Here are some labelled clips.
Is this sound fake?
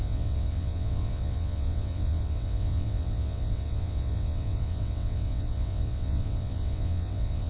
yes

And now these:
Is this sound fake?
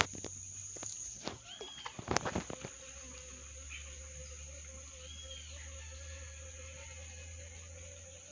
no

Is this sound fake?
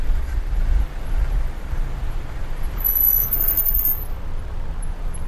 yes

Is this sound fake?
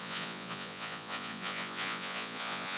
yes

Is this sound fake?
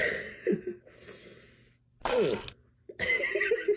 no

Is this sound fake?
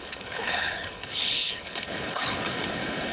yes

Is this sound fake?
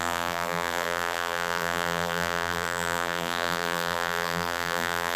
yes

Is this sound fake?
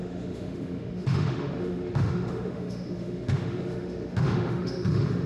yes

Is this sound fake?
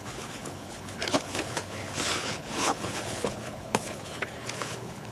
yes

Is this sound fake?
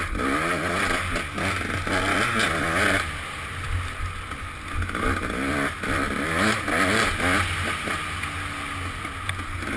no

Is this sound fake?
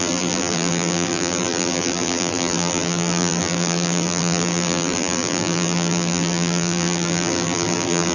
yes